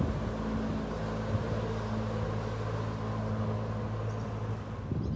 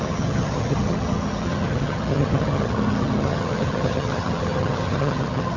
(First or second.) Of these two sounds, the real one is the first